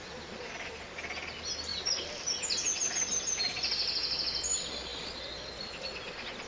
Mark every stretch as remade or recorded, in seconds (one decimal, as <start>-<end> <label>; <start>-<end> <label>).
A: 0.0-6.5 recorded